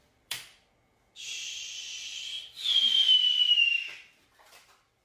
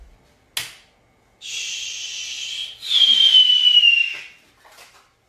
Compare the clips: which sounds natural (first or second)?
second